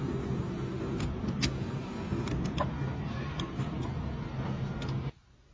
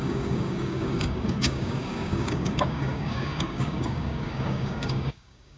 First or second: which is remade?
second